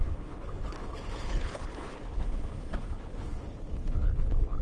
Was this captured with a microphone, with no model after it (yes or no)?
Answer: no